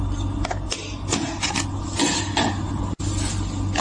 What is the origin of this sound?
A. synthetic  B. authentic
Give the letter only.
B